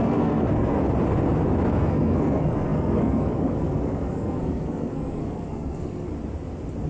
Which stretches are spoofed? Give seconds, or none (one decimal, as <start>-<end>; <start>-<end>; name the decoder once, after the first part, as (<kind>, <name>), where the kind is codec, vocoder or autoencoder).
0.0-0.8 (codec, SNAC); 1.7-6.1